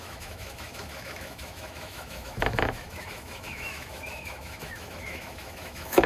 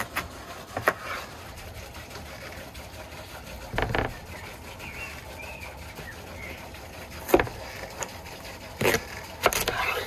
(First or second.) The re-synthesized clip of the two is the first